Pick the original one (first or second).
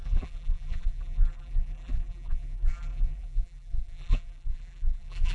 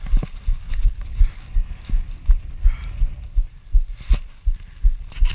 second